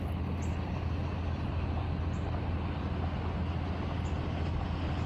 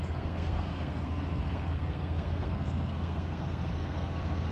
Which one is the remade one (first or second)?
second